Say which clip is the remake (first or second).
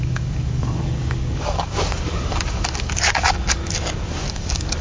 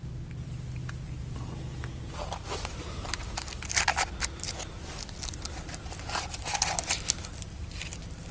first